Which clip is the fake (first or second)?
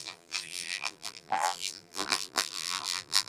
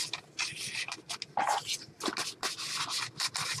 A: first